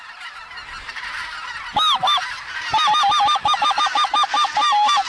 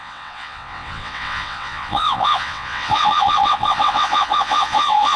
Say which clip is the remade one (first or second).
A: second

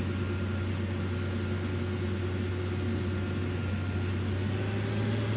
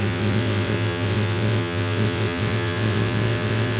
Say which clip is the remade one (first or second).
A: second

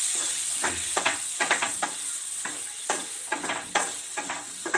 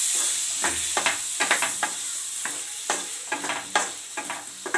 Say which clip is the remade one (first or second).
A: first